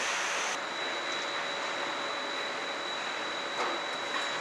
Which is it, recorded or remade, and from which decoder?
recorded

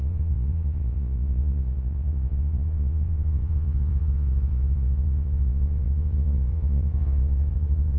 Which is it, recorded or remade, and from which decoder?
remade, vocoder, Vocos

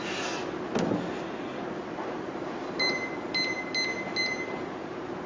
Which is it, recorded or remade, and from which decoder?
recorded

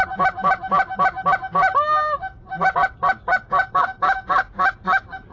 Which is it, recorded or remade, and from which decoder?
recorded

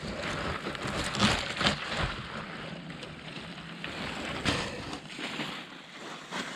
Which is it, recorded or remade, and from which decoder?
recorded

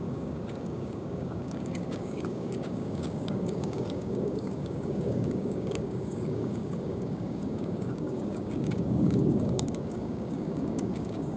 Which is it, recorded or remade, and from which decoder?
remade, codec, DAC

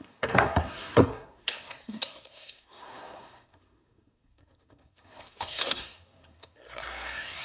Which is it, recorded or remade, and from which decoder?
remade, codec, SNAC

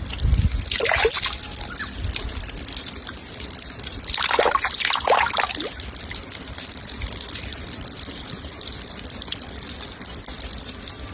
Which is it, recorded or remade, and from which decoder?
recorded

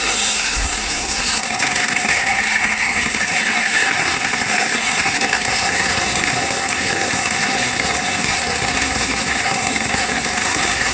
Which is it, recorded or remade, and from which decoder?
remade, codec, SNAC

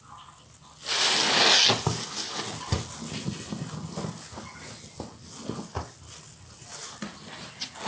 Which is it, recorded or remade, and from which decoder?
recorded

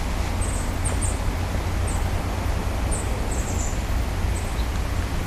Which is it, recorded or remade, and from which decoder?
recorded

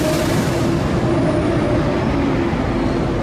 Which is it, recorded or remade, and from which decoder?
recorded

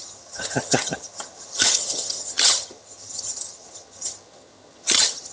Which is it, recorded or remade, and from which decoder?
remade, vocoder, HiFi-GAN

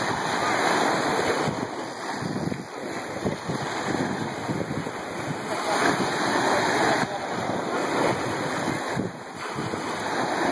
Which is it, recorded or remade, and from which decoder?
recorded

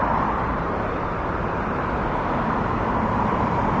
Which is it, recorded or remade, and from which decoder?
remade, vocoder, BigVGAN v2